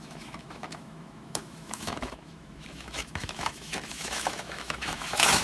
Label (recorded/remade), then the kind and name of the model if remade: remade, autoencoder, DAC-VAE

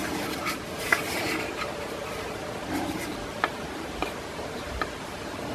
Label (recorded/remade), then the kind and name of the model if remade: remade, vocoder, BigVGAN v2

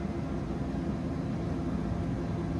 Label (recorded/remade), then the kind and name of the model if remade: recorded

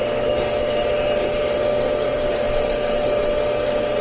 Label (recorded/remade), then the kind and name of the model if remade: remade, codec, DAC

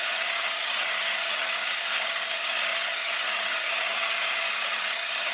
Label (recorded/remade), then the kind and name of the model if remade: remade, vocoder, HiFi-GAN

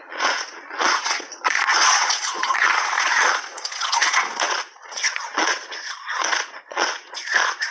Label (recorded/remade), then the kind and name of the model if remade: remade, vocoder, Vocos